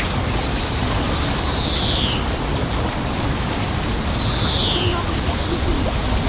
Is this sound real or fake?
real